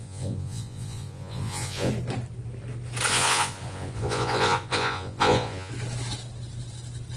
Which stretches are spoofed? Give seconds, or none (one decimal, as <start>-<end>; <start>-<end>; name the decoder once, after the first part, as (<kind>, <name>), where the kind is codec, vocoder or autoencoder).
0.0-1.9 (vocoder, Vocos); 3.1-5.7